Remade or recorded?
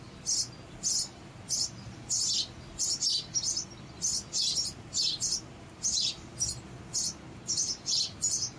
recorded